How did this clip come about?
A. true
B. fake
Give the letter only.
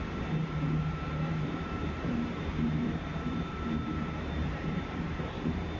B